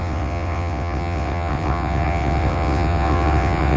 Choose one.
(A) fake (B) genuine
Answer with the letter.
A